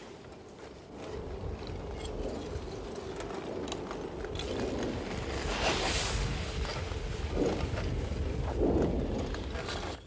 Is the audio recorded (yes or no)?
yes